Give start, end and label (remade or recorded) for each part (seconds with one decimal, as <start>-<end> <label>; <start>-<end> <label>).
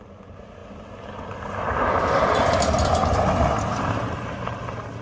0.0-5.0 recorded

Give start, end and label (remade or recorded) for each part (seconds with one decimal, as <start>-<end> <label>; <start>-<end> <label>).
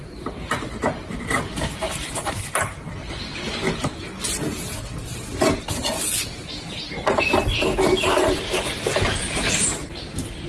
0.0-10.5 recorded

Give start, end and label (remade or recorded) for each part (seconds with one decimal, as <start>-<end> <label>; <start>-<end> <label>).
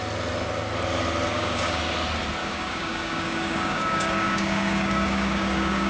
0.0-1.3 recorded; 1.3-1.8 remade; 1.8-2.4 recorded; 2.4-5.9 remade